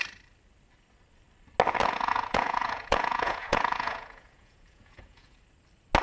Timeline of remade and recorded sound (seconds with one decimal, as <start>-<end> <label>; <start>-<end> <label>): 0.0-1.8 recorded; 1.8-5.4 remade; 5.4-6.0 recorded